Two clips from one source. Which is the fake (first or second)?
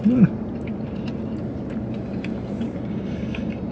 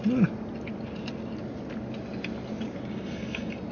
first